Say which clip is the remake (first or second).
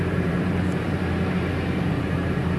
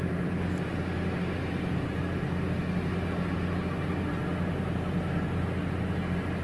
first